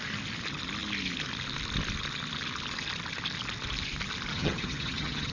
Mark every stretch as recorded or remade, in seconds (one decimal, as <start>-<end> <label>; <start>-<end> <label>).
0.0-4.3 recorded; 4.3-5.3 remade